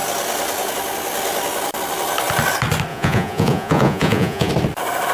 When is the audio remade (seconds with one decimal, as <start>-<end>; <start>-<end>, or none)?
2.9-4.5